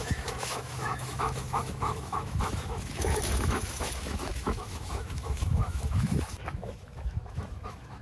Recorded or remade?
remade